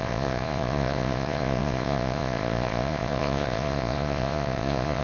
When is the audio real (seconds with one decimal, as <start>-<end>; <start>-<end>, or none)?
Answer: none